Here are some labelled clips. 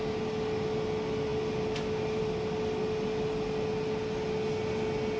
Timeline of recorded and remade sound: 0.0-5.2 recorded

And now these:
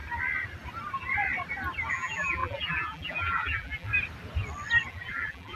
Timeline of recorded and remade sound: 0.0-1.9 recorded; 1.9-3.9 remade; 3.9-4.9 recorded; 4.9-5.6 remade

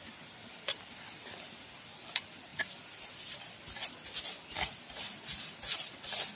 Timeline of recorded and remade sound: 0.0-6.4 remade

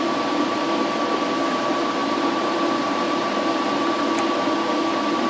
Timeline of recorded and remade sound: 0.0-0.6 remade; 0.6-1.5 recorded; 1.5-5.3 remade

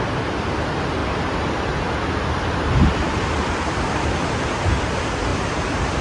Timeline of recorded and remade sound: 0.0-5.3 recorded; 5.3-6.0 remade

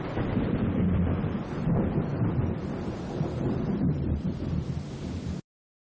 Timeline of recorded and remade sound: 0.0-5.8 remade

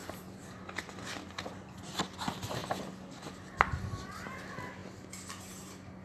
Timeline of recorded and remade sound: 0.0-2.0 remade; 2.0-6.0 recorded